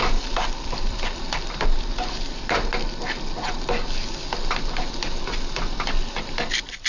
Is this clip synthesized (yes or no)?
no